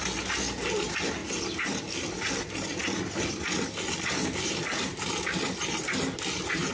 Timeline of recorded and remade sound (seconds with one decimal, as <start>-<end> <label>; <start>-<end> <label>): 0.0-6.7 recorded